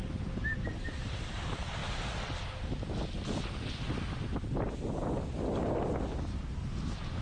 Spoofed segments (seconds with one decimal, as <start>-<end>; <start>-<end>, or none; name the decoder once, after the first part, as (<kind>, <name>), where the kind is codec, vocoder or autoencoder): none